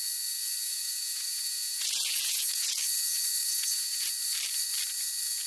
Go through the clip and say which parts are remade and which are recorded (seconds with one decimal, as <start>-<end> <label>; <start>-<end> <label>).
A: 0.0-0.7 recorded; 0.7-2.8 remade; 2.8-3.5 recorded; 3.5-4.1 remade; 4.1-5.5 recorded